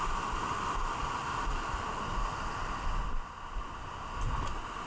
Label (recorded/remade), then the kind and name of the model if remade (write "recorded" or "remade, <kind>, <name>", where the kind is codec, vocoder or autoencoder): recorded